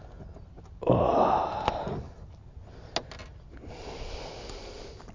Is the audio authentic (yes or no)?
yes